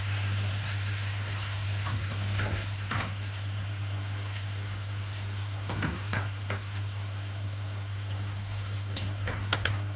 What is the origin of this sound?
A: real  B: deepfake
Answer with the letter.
B